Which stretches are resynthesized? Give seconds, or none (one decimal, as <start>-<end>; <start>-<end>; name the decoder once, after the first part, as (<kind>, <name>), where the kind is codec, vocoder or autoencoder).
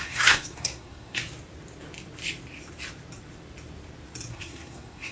0.0-1.2 (codec, SNAC); 4.3-5.1